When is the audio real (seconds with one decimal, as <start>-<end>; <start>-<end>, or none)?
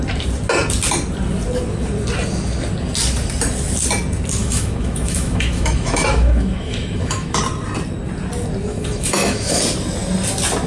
0.0-4.4; 7.4-8.7; 9.6-10.7